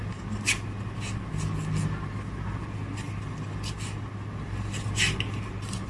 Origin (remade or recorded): recorded